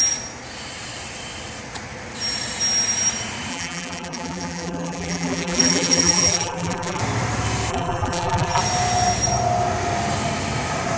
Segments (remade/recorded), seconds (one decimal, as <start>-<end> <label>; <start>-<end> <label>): 0.0-3.5 recorded; 3.5-7.0 remade; 7.0-7.7 recorded; 7.7-8.6 remade; 8.6-11.0 recorded